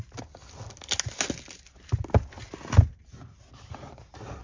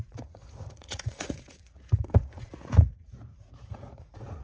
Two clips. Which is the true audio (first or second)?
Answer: first